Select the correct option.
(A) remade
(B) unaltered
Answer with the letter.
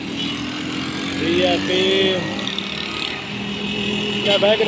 B